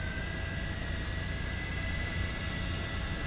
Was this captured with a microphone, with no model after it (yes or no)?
yes